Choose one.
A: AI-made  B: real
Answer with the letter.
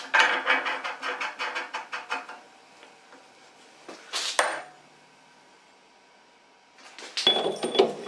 B